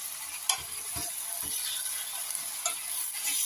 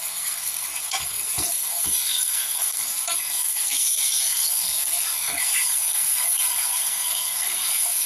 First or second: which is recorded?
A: first